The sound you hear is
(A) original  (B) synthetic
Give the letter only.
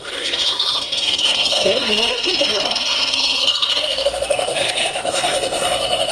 B